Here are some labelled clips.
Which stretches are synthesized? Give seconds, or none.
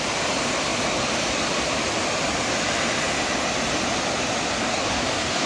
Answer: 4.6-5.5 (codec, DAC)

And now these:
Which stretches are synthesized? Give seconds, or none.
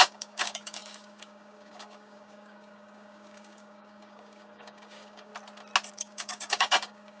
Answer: 0.0-5.3 (codec, DAC); 5.9-7.2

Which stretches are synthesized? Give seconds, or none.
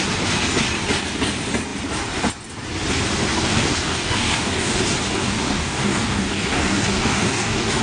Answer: 3.3-4.8 (codec, DAC); 5.2-7.8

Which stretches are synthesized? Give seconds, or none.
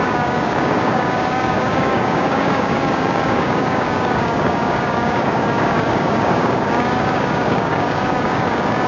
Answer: 0.0-8.9 (codec, DAC)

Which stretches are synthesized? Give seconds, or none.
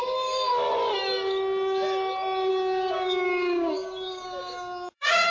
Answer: 0.0-0.5 (codec, DAC); 2.5-5.3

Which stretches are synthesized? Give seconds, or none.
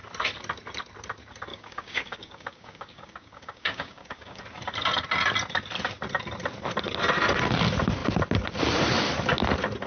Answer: 1.5-4.4 (codec, DAC)